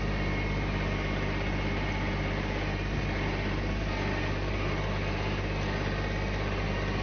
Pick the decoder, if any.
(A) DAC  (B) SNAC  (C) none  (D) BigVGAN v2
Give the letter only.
C